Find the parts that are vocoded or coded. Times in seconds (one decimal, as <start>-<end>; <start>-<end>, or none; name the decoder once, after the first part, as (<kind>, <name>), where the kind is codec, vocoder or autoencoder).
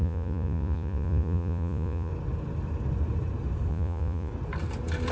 0.0-2.1 (vocoder, Vocos); 3.7-4.3